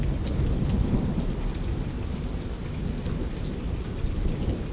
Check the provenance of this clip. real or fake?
real